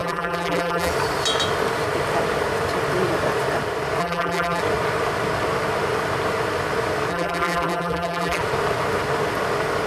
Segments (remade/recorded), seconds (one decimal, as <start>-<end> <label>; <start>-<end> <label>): 0.0-0.9 remade; 0.9-4.0 recorded; 4.0-4.6 remade; 4.6-7.1 recorded; 7.1-8.4 remade; 8.4-9.9 recorded